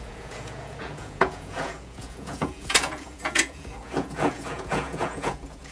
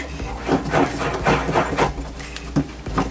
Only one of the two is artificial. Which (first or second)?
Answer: first